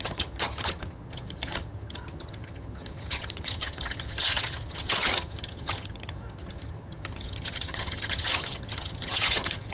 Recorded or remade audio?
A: remade